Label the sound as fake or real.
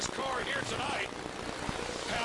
real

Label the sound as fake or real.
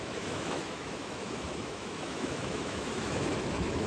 fake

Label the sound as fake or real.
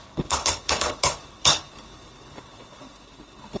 fake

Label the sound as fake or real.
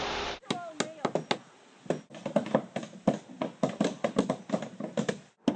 real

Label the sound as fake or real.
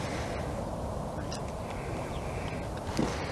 real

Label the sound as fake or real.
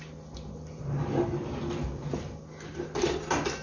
real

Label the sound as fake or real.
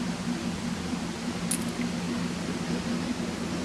real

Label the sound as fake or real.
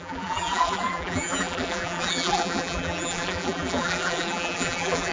fake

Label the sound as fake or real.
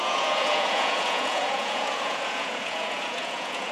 fake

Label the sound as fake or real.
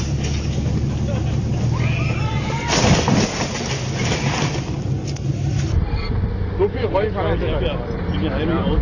real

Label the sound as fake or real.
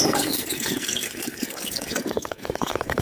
fake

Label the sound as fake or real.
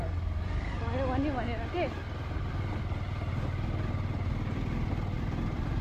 real